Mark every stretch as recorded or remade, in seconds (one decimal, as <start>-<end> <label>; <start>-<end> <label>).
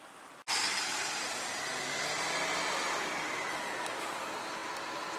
0.0-5.2 recorded